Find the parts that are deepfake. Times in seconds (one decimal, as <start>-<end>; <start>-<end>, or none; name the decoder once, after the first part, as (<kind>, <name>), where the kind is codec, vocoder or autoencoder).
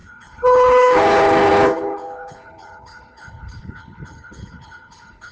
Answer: 0.0-5.3 (codec, HILCodec)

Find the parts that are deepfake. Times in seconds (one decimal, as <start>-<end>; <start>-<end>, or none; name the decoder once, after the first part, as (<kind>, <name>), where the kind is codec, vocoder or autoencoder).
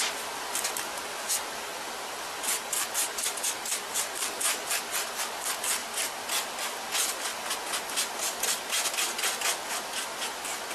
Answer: none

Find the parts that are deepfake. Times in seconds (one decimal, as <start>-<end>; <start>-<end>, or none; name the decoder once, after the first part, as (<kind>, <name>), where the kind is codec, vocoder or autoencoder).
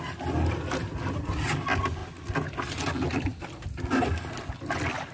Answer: none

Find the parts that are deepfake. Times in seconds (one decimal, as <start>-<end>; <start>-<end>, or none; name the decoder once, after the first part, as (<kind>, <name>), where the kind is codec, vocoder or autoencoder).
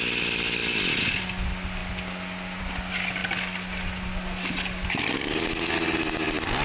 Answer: none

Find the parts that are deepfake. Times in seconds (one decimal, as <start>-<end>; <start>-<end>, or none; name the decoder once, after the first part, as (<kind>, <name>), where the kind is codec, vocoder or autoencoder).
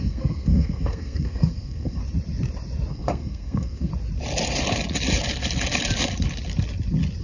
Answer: 0.0-2.0 (codec, SNAC); 2.9-3.9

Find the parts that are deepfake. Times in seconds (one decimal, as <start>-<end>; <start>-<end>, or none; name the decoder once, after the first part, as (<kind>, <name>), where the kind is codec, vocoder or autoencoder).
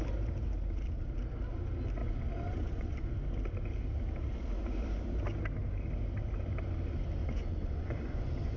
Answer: 2.0-3.1 (vocoder, Vocos); 7.2-8.6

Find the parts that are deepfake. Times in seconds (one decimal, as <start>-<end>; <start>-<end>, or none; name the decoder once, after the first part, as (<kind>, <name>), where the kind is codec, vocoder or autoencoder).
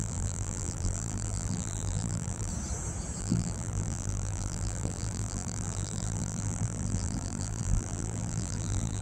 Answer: 0.0-2.5 (vocoder, BigVGAN v2); 3.2-9.0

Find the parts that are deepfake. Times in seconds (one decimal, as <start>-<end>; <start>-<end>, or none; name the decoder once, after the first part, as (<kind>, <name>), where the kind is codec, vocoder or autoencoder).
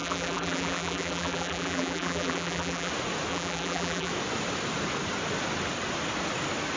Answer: 0.0-2.9 (vocoder, BigVGAN v2); 3.3-4.1